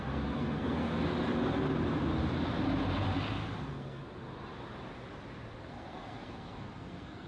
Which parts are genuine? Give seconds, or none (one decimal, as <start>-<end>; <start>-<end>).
0.9-3.6; 4.0-5.6